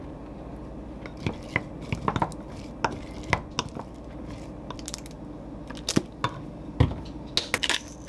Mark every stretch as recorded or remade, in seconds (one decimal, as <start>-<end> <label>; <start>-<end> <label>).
0.0-8.1 recorded